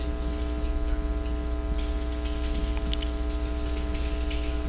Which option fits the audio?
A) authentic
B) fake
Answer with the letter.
A